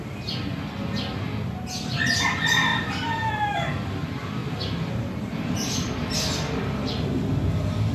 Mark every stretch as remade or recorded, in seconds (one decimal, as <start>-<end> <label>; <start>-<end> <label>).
0.0-2.7 recorded; 2.7-3.3 remade; 3.3-4.4 recorded; 4.4-6.6 remade; 6.6-7.9 recorded